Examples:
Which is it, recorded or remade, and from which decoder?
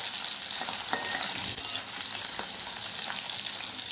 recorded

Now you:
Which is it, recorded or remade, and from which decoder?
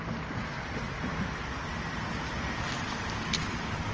recorded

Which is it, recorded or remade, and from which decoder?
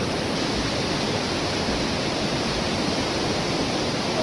recorded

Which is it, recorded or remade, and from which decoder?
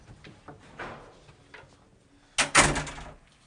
recorded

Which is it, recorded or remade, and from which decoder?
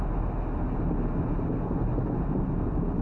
recorded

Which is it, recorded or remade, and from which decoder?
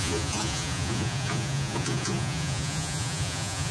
remade, vocoder, Vocos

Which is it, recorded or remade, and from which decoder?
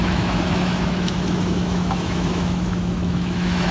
remade, autoencoder, DAC-VAE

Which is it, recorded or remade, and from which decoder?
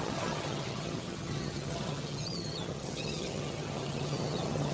remade, vocoder, HiFi-GAN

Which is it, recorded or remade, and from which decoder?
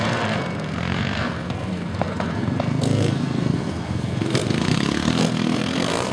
remade, codec, SNAC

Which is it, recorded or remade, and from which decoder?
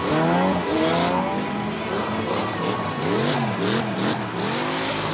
recorded